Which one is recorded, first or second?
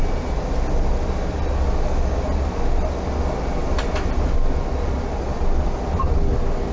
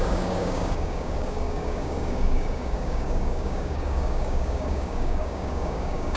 first